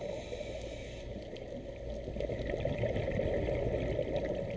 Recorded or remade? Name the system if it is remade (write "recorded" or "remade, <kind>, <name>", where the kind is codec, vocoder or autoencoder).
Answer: recorded